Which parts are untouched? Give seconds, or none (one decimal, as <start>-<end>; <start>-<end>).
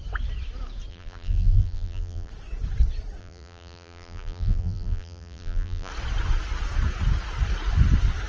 0.0-0.9; 2.3-3.2; 5.9-8.3